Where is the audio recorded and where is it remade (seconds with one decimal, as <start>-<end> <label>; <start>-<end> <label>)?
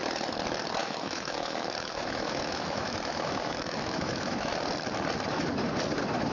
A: 0.0-0.8 recorded; 0.8-4.5 remade; 4.5-6.3 recorded